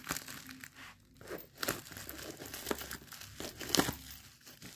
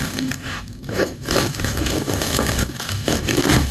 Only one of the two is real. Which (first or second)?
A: first